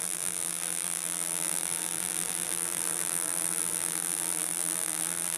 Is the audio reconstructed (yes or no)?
yes